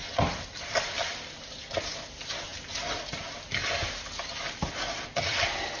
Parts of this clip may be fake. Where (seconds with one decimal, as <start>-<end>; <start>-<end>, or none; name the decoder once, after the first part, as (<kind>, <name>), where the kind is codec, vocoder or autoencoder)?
none